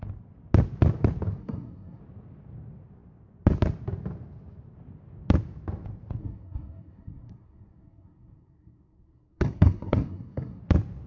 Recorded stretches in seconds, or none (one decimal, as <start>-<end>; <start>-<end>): 0.0-1.4; 2.0-6.2; 10.6-11.1